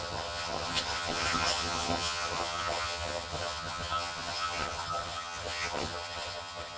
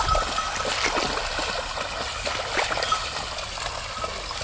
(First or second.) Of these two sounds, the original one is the second